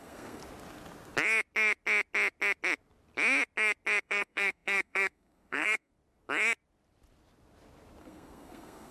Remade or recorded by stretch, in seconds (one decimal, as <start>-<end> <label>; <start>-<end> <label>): 0.0-0.4 remade; 0.4-4.0 recorded; 4.0-5.9 remade; 5.9-8.0 recorded; 8.0-8.9 remade